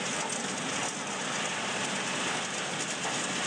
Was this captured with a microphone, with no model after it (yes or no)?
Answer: yes